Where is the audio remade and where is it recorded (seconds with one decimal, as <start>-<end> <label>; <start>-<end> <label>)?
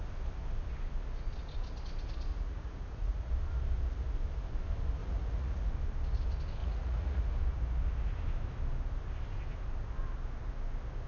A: 0.0-2.3 recorded; 2.3-3.3 remade; 3.3-5.0 recorded; 5.0-5.7 remade; 5.7-6.6 recorded; 6.6-7.2 remade; 7.2-11.1 recorded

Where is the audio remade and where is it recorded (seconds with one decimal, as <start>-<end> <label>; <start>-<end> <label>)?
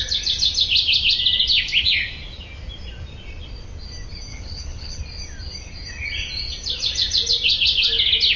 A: 0.0-4.3 recorded; 4.3-5.0 remade; 5.0-8.4 recorded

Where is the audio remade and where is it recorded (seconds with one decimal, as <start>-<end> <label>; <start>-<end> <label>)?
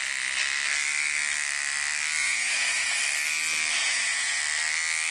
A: 0.0-2.2 recorded; 2.2-3.0 remade; 3.0-3.8 recorded; 3.8-4.4 remade; 4.4-5.1 recorded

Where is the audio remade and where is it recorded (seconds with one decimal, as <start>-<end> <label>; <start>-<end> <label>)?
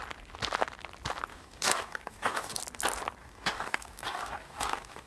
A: 0.0-1.3 recorded; 1.3-2.6 remade; 2.6-3.2 recorded; 3.2-5.1 remade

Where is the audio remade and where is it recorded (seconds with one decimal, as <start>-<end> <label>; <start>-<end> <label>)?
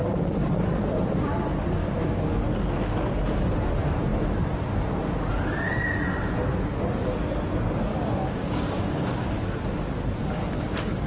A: 0.0-1.8 recorded; 1.8-2.4 remade; 2.4-7.9 recorded; 7.9-9.4 remade; 9.4-11.1 recorded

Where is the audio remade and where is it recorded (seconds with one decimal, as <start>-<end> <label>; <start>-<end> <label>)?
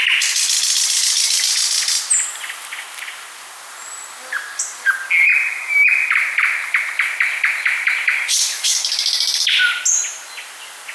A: 0.0-10.9 recorded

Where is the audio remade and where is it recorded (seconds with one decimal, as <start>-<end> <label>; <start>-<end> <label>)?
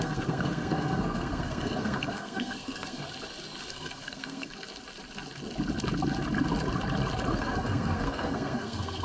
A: 0.0-3.0 remade; 3.0-3.7 recorded; 3.7-4.5 remade; 4.5-7.3 recorded; 7.3-9.0 remade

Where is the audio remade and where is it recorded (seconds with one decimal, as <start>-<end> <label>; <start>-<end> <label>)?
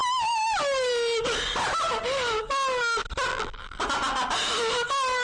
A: 0.0-3.3 recorded; 3.3-3.8 remade; 3.8-5.2 recorded